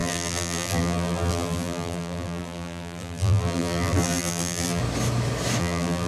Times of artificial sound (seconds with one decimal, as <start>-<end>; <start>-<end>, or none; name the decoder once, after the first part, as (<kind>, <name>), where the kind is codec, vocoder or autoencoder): 0.0-4.8 (vocoder, BigVGAN v2); 5.6-6.1